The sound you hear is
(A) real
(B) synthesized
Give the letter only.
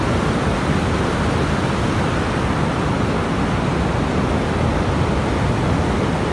A